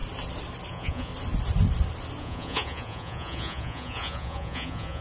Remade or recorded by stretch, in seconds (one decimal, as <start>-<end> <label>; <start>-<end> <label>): 0.0-0.7 recorded; 0.7-1.1 remade; 1.1-2.2 recorded; 2.2-5.0 remade